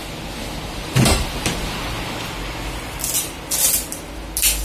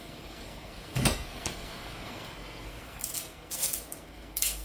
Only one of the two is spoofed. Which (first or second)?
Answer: second